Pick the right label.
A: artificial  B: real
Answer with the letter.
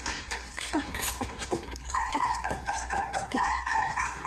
A